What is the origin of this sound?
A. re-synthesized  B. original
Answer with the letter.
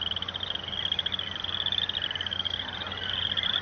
B